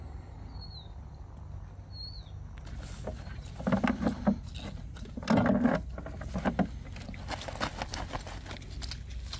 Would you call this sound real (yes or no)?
yes